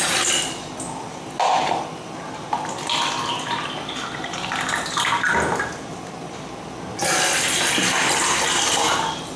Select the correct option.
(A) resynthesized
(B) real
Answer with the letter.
B